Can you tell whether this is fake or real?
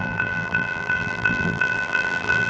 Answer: fake